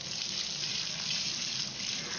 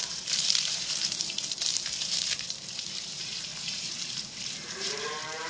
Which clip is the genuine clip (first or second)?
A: first